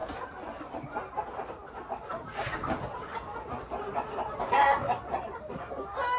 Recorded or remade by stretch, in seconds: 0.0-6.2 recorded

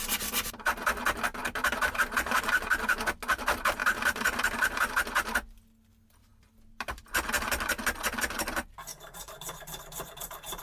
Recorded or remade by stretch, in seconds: 0.0-1.4 recorded; 1.4-2.4 remade; 2.4-3.8 recorded; 3.8-4.9 remade; 4.9-8.9 recorded; 8.9-10.6 remade